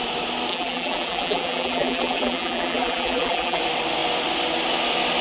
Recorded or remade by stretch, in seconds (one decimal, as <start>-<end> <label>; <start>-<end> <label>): 0.0-0.5 recorded; 0.5-3.6 remade; 3.6-5.2 recorded